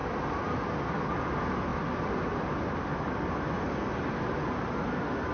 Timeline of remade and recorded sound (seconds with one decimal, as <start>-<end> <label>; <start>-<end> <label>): 0.0-5.3 recorded